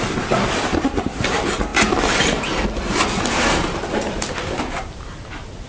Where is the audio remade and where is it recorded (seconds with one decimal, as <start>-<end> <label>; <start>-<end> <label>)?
0.0-5.7 recorded